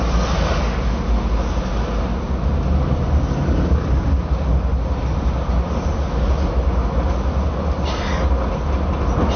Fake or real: real